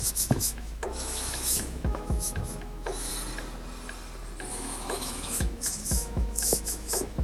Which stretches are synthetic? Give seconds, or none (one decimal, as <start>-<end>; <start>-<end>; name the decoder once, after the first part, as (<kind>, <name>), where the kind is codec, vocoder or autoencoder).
0.0-3.1 (autoencoder, DAC-VAE); 4.5-7.2